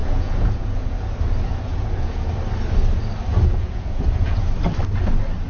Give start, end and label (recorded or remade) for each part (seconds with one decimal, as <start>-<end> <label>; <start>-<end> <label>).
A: 0.0-1.1 remade; 1.1-1.7 recorded; 1.7-2.3 remade; 2.3-3.3 recorded; 3.3-4.5 remade; 4.5-5.5 recorded